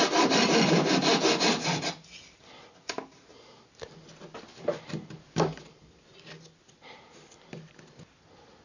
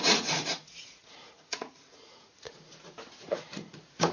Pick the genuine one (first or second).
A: first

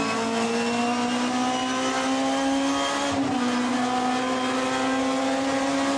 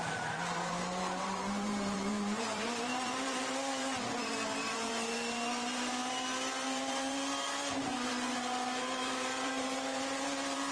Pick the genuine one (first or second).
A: first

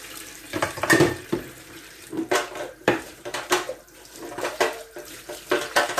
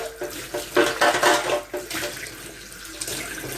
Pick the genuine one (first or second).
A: second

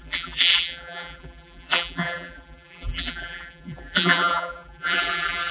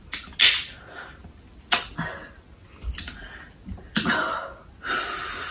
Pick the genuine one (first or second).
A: second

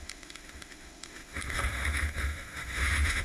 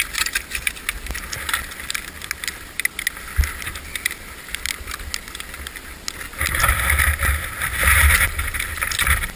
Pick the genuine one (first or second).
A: second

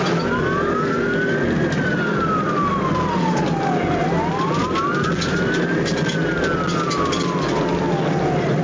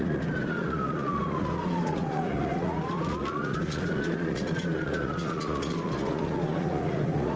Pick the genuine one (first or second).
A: first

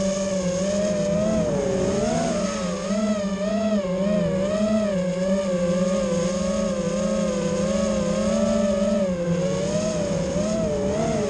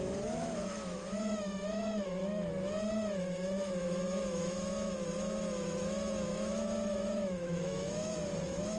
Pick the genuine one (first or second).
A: first